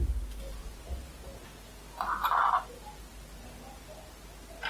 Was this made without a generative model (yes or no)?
yes